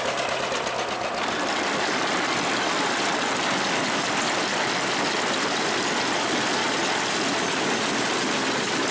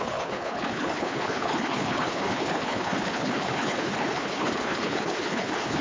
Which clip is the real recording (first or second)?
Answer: first